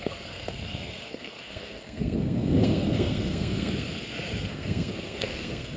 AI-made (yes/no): yes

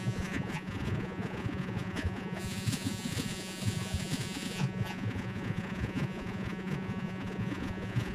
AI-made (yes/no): yes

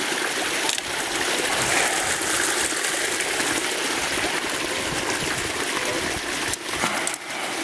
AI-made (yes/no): no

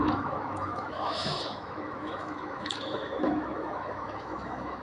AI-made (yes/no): yes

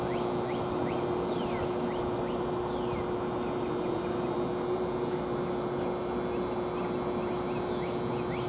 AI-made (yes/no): no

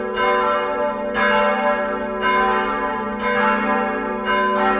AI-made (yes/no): no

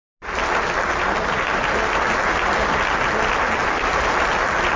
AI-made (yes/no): no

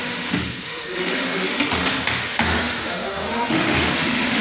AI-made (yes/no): yes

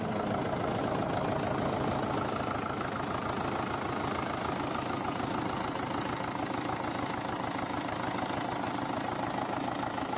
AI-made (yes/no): no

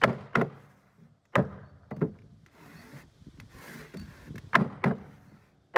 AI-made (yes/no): no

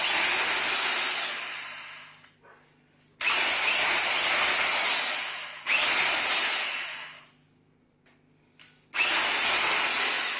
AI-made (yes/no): no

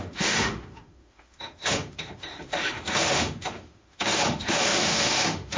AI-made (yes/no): yes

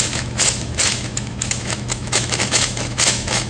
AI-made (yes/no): yes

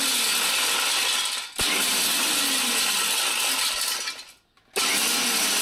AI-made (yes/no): no